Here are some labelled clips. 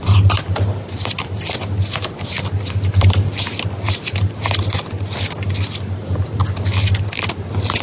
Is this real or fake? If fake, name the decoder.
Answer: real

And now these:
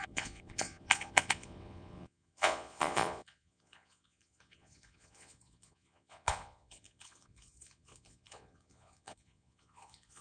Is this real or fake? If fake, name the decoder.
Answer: fake, vocoder, Vocos